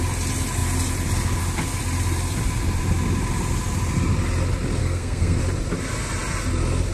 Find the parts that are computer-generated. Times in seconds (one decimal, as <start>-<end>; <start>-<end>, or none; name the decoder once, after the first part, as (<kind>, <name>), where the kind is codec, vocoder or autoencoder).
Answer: 4.8-5.4 (codec, SNAC)